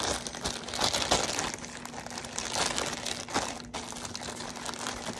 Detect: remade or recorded recorded